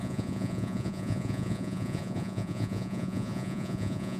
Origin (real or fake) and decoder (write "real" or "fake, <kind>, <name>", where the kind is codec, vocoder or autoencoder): fake, vocoder, Vocos